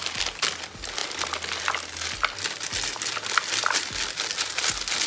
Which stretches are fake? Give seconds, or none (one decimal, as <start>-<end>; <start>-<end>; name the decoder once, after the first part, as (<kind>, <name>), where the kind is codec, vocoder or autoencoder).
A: none